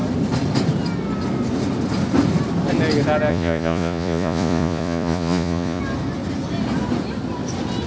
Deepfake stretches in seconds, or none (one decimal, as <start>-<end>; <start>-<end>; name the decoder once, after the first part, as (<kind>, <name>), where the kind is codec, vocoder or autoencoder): 3.3-5.8 (vocoder, Vocos)